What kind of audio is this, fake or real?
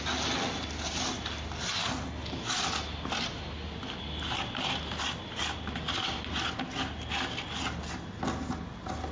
real